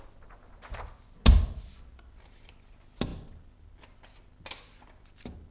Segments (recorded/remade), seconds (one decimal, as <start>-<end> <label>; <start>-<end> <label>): 0.0-5.5 recorded